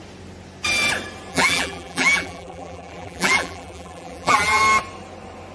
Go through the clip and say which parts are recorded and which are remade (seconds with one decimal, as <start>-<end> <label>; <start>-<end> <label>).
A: 0.0-1.3 recorded; 1.3-4.6 remade; 4.6-5.5 recorded